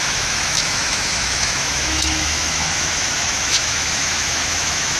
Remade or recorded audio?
remade